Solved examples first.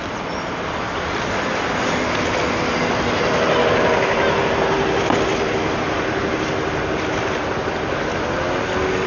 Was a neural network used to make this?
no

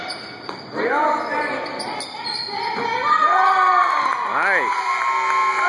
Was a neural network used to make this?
no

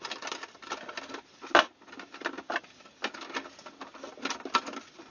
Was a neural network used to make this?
no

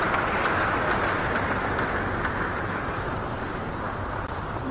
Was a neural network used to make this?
no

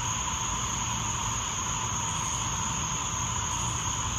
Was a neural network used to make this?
no